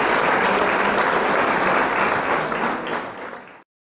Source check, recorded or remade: recorded